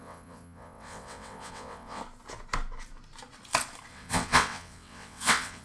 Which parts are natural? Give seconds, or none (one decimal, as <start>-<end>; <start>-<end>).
2.0-3.9